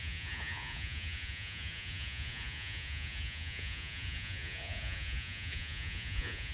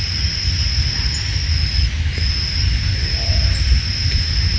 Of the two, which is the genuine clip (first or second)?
second